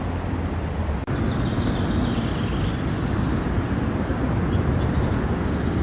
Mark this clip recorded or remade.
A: recorded